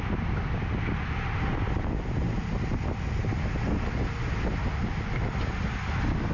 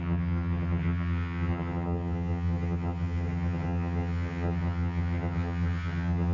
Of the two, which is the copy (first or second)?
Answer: second